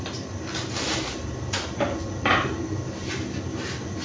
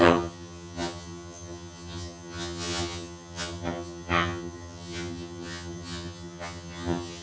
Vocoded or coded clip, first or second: second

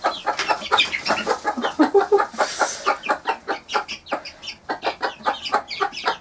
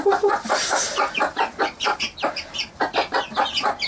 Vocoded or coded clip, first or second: second